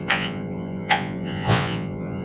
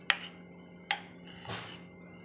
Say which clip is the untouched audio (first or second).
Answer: second